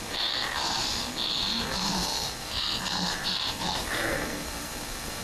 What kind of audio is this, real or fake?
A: fake